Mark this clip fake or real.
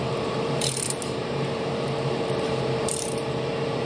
fake